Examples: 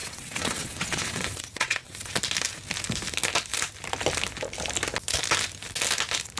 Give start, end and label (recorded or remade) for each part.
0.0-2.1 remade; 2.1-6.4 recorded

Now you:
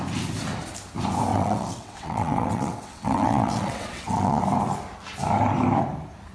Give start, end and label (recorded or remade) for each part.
0.0-1.3 recorded; 1.3-4.4 remade; 4.4-6.3 recorded